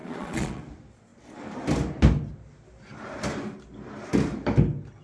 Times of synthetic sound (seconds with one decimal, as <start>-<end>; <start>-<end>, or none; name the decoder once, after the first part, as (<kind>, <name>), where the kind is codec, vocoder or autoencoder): 0.0-0.6 (vocoder, Vocos)